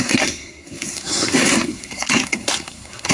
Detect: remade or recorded remade